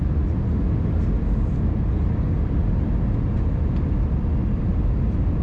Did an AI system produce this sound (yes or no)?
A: no